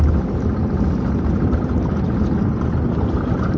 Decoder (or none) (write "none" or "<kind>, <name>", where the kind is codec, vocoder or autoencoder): none